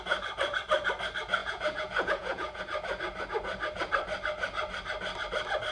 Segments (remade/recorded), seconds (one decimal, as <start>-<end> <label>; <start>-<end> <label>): 0.0-1.4 recorded; 1.4-2.6 remade; 2.6-5.7 recorded